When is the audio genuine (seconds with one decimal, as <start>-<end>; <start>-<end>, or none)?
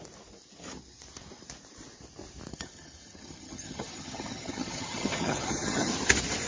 0.0-2.5; 5.9-6.5